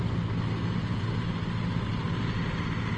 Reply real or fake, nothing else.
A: real